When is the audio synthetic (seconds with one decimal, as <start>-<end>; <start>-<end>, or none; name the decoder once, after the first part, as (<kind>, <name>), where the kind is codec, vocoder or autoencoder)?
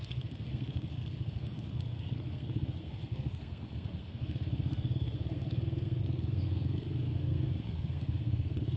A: 0.0-8.8 (codec, SNAC)